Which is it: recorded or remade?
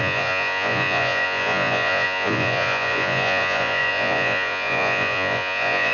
remade